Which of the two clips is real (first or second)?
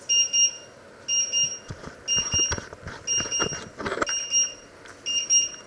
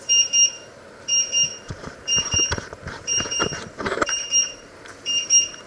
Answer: first